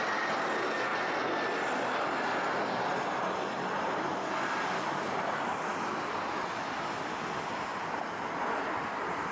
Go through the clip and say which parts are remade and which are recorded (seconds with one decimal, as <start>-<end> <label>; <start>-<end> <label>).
0.0-0.9 remade; 0.9-2.0 recorded; 2.0-5.7 remade; 5.7-8.5 recorded; 8.5-9.3 remade